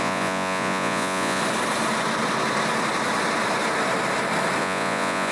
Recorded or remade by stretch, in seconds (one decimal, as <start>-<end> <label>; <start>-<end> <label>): 0.0-1.4 remade; 1.4-4.6 recorded; 4.6-5.3 remade